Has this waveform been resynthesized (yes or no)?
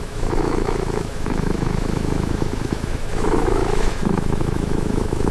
yes